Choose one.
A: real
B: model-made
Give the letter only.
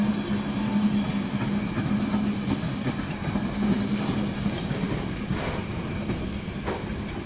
A